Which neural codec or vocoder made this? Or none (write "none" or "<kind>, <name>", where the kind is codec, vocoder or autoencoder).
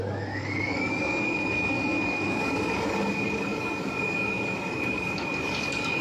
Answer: codec, DAC